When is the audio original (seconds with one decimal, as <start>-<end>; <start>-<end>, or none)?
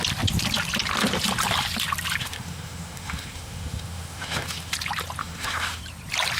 0.0-2.2; 4.7-5.2; 5.8-6.4